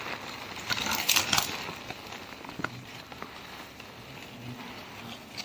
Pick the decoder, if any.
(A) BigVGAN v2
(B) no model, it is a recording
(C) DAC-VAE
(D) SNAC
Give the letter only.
B